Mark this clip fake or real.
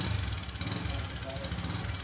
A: real